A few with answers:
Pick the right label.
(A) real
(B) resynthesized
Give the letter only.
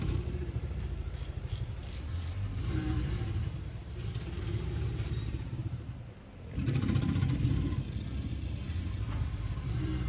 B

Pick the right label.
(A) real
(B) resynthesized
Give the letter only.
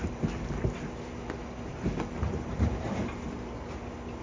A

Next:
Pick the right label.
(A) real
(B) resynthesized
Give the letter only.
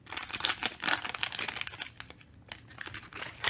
B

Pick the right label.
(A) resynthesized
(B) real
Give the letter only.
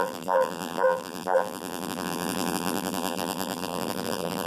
A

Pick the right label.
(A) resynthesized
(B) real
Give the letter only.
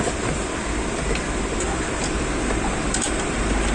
A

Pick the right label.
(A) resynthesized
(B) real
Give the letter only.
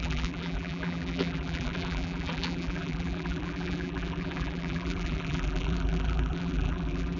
A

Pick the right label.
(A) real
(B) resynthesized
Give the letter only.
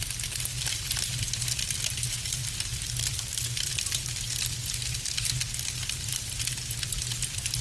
A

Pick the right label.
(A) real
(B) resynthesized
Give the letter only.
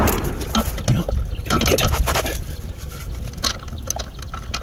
A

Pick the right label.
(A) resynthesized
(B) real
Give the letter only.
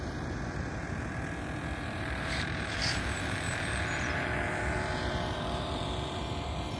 A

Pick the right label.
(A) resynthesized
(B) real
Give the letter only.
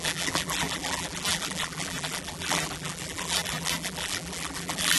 A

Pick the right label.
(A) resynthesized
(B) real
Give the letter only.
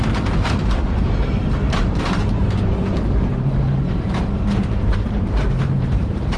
A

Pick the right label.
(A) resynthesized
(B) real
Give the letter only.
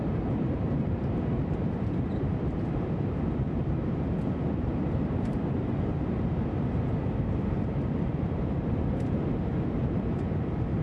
A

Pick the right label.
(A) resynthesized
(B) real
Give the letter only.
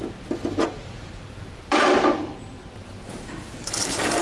A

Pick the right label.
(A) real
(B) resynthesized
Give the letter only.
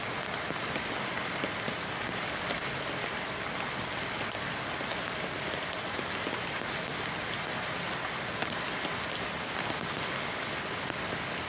A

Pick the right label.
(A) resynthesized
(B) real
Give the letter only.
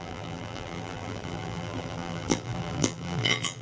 A